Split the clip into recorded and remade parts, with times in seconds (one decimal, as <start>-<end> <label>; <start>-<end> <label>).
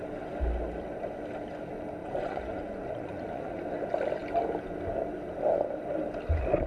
0.0-2.0 recorded; 2.0-3.6 remade; 3.6-6.7 recorded